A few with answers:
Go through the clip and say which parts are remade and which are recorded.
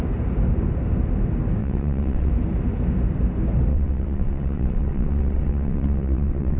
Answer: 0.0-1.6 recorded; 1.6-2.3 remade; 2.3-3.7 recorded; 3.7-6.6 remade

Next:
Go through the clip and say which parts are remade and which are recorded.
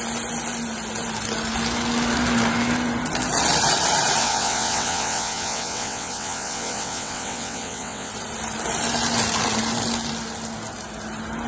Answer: 0.0-4.2 recorded; 4.2-8.1 remade; 8.1-11.5 recorded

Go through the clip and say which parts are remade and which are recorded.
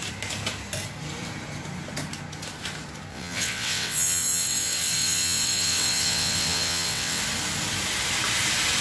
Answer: 0.0-3.1 recorded; 3.1-7.2 remade; 7.2-8.8 recorded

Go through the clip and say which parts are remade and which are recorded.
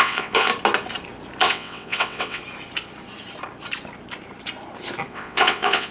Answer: 0.0-0.5 remade; 0.5-1.4 recorded; 1.4-2.4 remade; 2.4-5.1 recorded; 5.1-5.9 remade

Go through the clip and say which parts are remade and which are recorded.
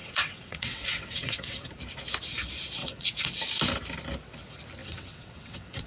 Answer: 0.0-1.7 remade; 1.7-2.8 recorded; 2.8-3.4 remade; 3.4-4.8 recorded; 4.8-5.9 remade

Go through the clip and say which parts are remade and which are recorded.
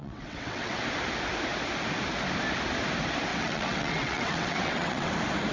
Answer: 0.0-0.8 remade; 0.8-3.3 recorded; 3.3-5.1 remade; 5.1-5.5 recorded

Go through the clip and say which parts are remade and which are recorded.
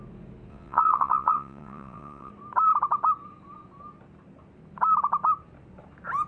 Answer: 0.0-0.5 recorded; 0.5-2.3 remade; 2.3-6.3 recorded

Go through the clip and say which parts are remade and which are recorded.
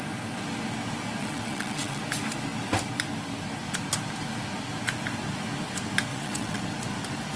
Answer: 0.0-1.2 recorded; 1.2-2.0 remade; 2.0-6.1 recorded; 6.1-6.6 remade; 6.6-7.4 recorded